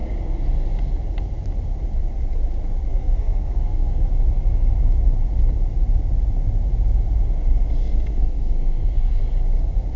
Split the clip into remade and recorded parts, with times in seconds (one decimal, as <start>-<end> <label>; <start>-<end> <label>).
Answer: 0.0-2.9 recorded; 2.9-4.1 remade; 4.1-7.8 recorded; 7.8-9.2 remade; 9.2-10.0 recorded